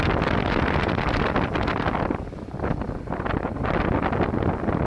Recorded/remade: recorded